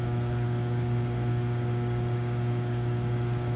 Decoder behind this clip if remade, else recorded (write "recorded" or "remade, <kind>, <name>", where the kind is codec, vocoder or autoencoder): remade, codec, DAC